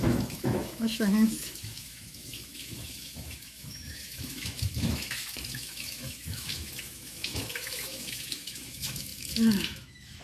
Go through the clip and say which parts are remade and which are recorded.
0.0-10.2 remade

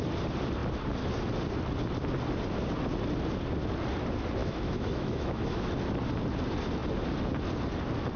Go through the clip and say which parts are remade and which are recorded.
0.0-4.4 recorded; 4.4-5.7 remade; 5.7-8.2 recorded

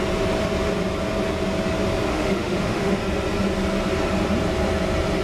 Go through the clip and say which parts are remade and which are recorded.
0.0-2.1 recorded; 2.1-3.0 remade; 3.0-5.2 recorded

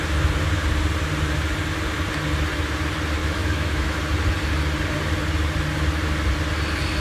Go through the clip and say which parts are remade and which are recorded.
0.0-3.2 recorded; 3.2-4.0 remade; 4.0-7.0 recorded

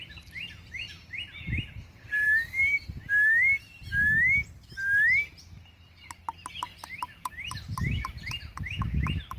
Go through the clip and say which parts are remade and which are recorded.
0.0-9.4 recorded

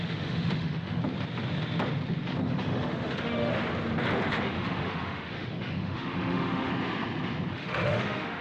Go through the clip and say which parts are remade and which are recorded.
0.0-1.0 remade; 1.0-2.5 recorded; 2.5-3.5 remade; 3.5-4.4 recorded; 4.4-6.7 remade; 6.7-7.5 recorded; 7.5-8.4 remade